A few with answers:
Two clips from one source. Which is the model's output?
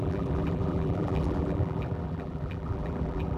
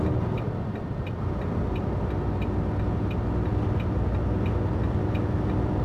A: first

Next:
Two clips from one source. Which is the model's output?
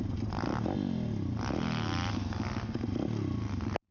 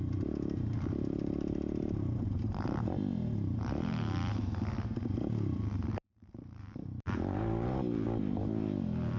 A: second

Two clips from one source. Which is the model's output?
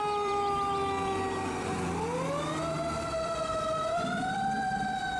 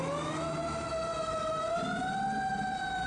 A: first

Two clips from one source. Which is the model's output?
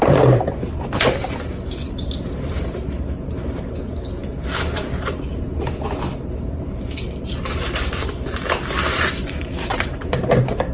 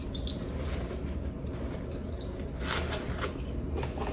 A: first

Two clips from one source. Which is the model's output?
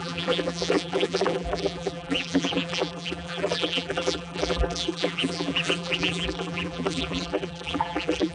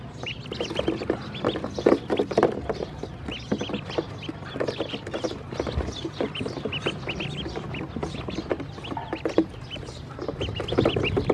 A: first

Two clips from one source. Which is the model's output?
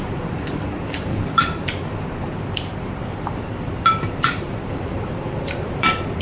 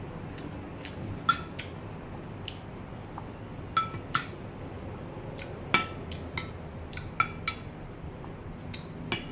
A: first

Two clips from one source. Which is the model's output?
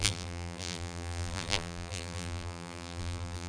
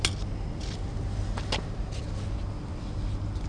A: first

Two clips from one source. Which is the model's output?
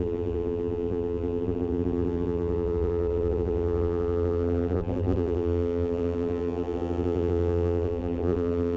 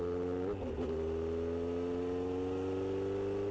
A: first